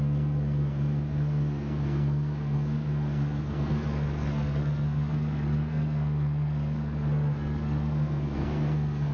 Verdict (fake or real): fake